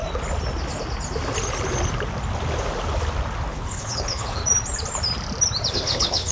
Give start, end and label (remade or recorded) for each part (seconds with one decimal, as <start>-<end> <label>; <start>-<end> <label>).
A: 0.0-3.5 recorded; 3.5-4.4 remade; 4.4-5.7 recorded; 5.7-6.3 remade